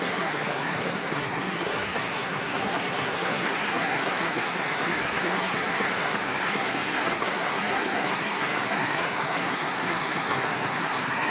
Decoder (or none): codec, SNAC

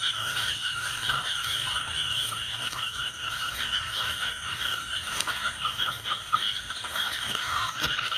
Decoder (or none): codec, DAC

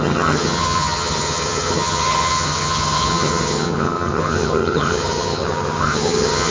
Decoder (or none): vocoder, HiFi-GAN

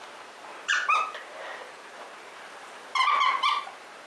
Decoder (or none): vocoder, BigVGAN v2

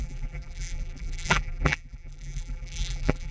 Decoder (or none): vocoder, BigVGAN v2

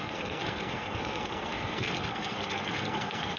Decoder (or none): codec, SNAC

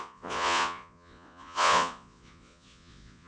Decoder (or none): vocoder, Vocos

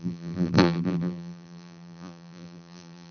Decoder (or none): vocoder, BigVGAN v2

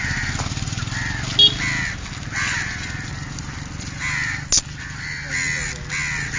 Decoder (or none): none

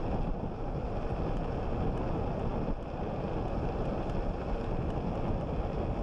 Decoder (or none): none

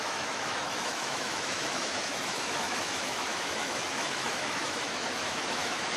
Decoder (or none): autoencoder, DAC-VAE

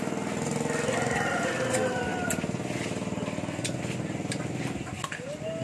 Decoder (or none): none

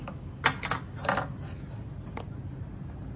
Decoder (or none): none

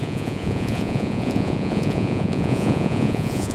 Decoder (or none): vocoder, Vocos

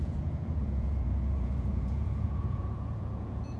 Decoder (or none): vocoder, Vocos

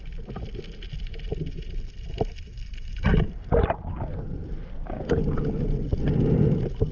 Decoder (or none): none